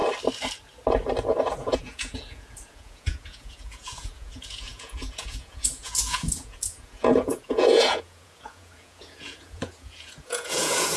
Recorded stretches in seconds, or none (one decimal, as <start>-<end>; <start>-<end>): 0.0-1.4